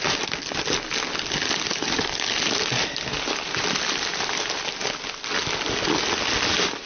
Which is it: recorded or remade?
recorded